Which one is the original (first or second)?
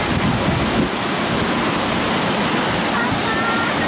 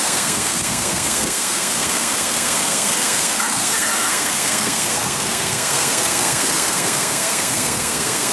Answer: first